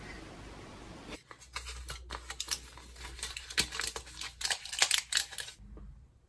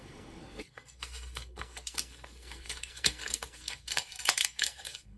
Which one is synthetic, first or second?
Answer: second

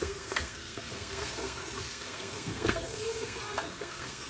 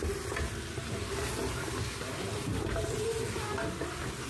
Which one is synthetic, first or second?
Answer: first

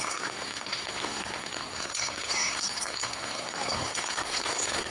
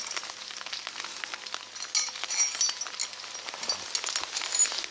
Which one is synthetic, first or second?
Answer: first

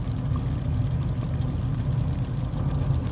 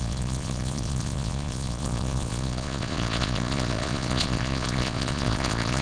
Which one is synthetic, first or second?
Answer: second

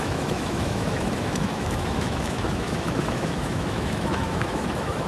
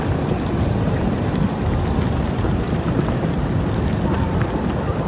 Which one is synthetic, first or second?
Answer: first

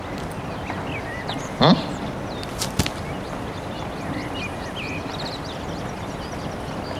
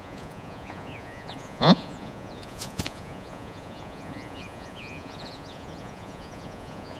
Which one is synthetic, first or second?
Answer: second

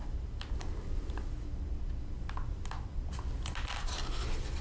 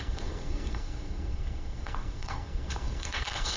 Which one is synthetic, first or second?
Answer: second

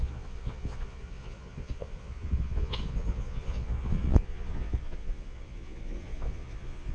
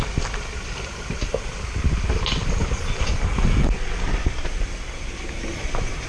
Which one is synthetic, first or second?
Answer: first